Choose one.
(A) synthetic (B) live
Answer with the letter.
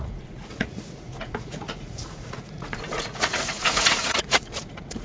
A